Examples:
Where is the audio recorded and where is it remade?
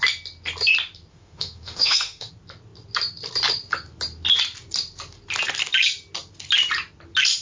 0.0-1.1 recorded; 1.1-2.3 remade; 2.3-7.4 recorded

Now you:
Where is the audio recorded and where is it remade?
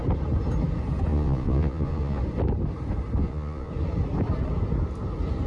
0.0-1.1 recorded; 1.1-2.2 remade; 2.2-3.2 recorded; 3.2-3.7 remade; 3.7-5.5 recorded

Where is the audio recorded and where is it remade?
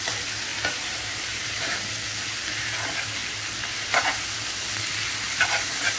0.0-0.5 recorded; 0.5-1.9 remade; 1.9-6.0 recorded